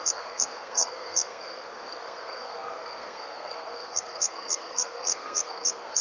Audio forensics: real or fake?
fake